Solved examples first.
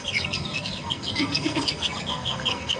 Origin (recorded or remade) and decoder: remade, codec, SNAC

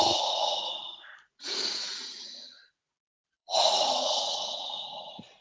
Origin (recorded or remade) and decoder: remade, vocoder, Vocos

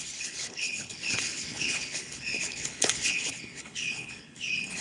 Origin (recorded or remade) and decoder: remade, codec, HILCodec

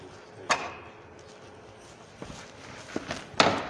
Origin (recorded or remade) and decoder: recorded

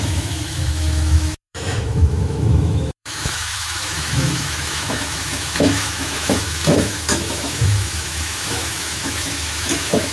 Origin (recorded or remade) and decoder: remade, autoencoder, DAC-VAE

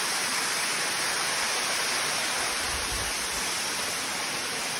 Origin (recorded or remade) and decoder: recorded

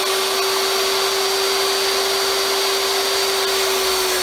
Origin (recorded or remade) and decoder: recorded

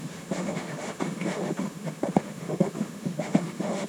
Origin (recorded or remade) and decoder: remade, autoencoder, DAC-VAE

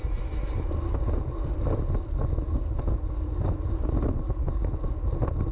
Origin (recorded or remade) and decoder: recorded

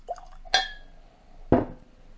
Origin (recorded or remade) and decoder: recorded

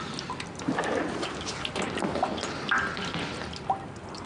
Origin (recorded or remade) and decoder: recorded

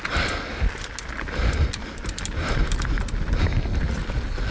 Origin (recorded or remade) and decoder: recorded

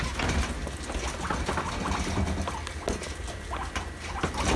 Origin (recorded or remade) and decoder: recorded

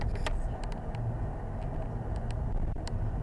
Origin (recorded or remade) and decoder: recorded